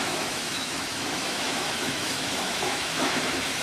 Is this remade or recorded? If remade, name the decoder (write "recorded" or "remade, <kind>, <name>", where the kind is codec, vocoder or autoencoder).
remade, autoencoder, DAC-VAE